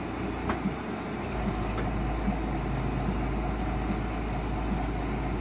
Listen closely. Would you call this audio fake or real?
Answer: real